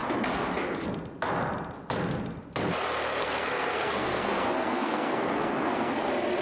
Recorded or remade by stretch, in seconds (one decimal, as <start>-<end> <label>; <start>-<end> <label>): 0.0-3.2 recorded; 3.2-6.0 remade; 6.0-6.4 recorded